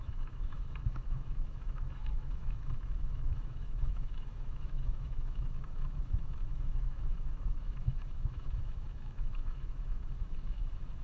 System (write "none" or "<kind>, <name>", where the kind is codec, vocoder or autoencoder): autoencoder, DAC-VAE